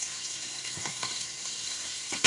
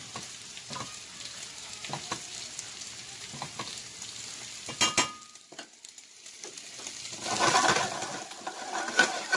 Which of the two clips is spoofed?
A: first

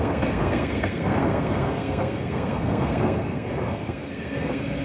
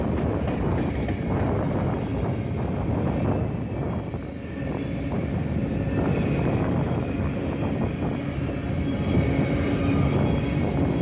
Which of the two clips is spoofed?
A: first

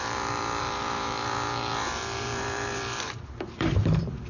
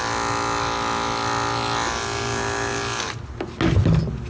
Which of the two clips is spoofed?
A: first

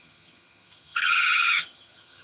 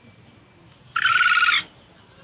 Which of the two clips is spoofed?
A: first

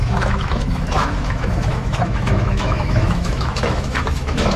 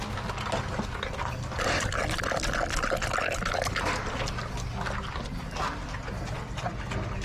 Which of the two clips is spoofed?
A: first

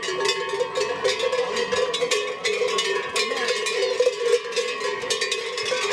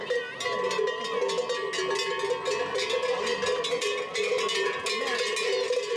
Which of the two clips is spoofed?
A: first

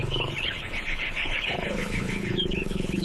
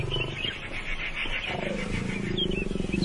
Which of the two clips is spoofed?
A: first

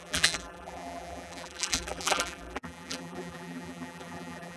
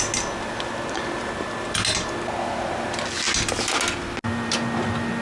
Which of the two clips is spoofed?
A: first